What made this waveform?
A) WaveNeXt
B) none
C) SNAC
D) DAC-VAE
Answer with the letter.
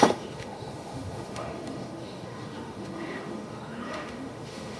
D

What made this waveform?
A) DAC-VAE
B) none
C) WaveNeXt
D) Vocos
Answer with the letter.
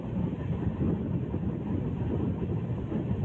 B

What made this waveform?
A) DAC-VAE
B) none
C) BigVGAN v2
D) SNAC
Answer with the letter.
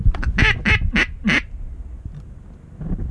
B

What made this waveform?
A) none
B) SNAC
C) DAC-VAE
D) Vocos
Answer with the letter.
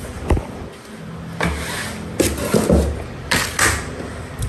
A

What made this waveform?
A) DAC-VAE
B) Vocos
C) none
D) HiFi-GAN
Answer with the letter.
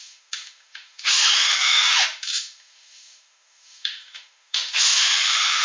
A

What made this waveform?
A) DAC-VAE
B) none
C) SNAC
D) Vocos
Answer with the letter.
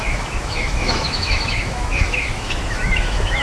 A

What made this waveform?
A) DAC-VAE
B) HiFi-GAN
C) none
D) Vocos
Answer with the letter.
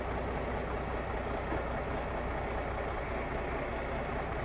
C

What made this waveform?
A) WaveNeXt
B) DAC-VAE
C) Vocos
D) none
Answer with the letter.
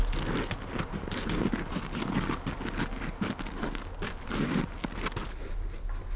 D